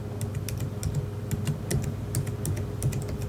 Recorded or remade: recorded